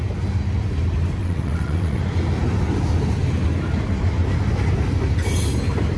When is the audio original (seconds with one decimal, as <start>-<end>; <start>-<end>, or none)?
0.0-1.2; 2.0-6.0